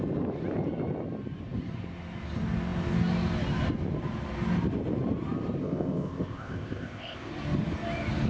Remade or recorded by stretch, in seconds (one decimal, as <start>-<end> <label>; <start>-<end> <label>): 0.0-5.6 recorded; 5.6-7.3 remade; 7.3-8.3 recorded